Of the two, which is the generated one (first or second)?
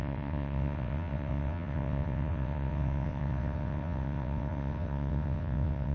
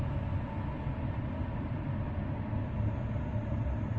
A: first